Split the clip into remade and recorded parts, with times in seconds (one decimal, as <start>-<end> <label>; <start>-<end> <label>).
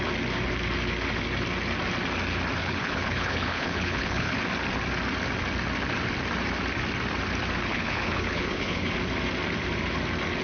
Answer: 0.0-2.6 recorded; 2.6-4.4 remade; 4.4-7.7 recorded; 7.7-8.9 remade; 8.9-10.4 recorded